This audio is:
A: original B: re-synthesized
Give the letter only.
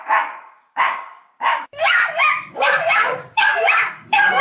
B